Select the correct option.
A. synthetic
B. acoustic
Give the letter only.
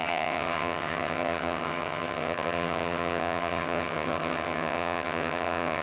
A